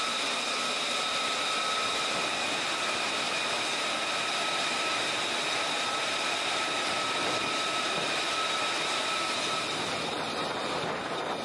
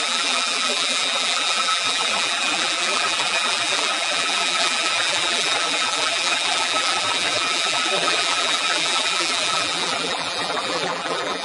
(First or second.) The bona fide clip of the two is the first